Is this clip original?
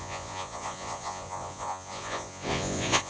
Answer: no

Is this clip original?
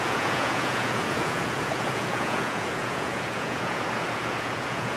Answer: no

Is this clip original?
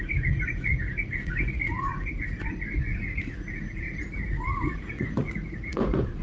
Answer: no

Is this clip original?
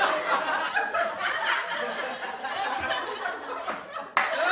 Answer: yes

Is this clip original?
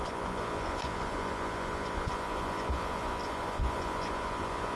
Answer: no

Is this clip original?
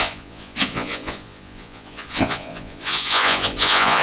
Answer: no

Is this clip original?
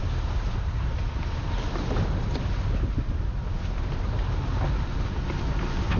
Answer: yes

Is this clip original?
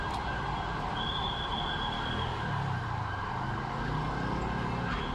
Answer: yes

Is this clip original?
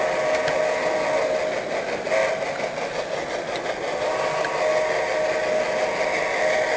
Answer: yes